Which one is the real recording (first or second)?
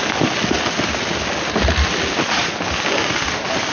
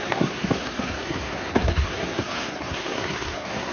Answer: first